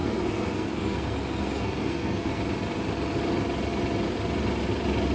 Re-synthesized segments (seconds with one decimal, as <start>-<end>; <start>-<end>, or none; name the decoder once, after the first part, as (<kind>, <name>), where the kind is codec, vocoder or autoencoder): 0.0-2.4 (codec, SNAC)